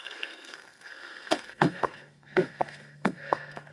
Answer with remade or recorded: remade